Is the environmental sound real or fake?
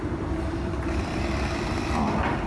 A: fake